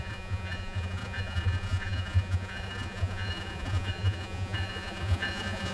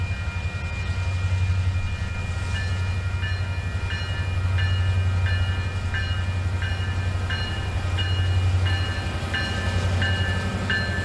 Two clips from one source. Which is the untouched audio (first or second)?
second